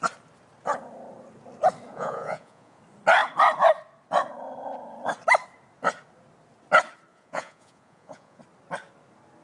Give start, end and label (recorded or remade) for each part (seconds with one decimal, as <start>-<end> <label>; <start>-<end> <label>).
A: 0.0-1.9 recorded; 1.9-2.8 remade; 2.8-7.1 recorded; 7.1-8.4 remade; 8.4-9.4 recorded